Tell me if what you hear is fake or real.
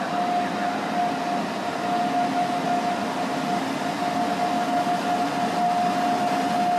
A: real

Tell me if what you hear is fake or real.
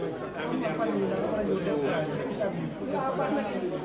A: real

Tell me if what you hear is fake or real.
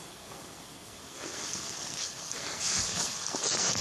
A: fake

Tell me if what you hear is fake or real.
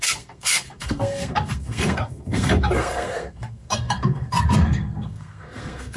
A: fake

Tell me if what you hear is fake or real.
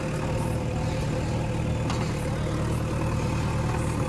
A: real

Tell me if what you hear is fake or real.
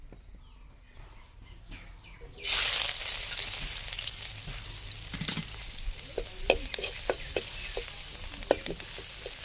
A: real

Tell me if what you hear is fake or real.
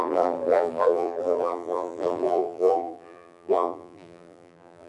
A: fake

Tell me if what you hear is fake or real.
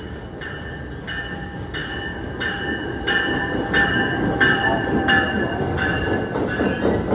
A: real